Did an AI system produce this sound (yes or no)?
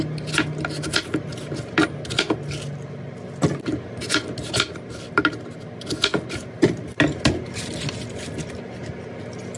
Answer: no